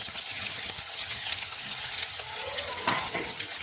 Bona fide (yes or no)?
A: no